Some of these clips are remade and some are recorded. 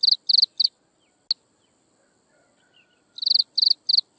recorded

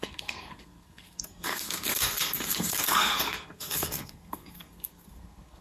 remade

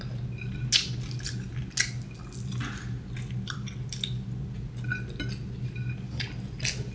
recorded